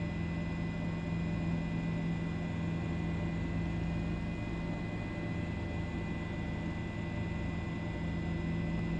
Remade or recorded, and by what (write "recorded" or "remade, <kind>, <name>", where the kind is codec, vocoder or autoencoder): recorded